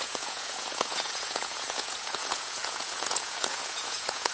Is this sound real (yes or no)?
no